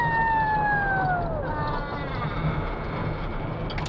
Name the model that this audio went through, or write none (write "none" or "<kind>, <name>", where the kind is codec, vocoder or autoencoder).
none